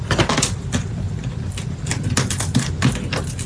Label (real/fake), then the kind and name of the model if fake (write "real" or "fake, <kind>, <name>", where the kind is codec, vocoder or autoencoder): real